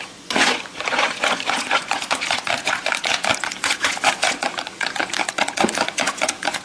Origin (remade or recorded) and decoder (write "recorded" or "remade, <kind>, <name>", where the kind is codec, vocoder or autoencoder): remade, vocoder, Vocos